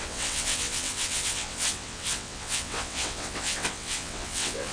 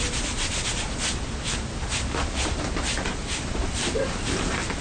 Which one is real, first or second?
second